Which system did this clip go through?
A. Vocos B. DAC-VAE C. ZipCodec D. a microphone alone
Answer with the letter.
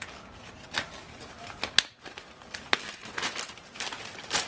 D